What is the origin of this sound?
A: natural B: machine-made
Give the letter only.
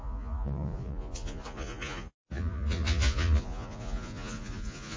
B